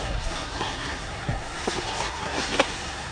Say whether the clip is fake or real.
fake